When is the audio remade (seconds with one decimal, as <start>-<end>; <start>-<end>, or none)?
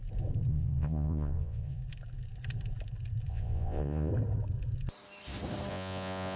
0.5-1.8; 3.3-4.1; 5.7-6.4